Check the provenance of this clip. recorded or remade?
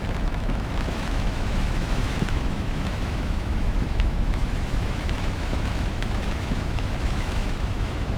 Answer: remade